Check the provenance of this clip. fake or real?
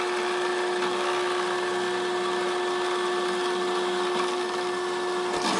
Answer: real